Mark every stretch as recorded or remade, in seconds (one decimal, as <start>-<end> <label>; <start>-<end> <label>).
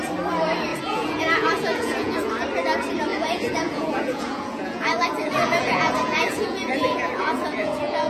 0.0-0.7 recorded; 0.7-2.3 remade; 2.3-3.1 recorded; 3.1-8.1 remade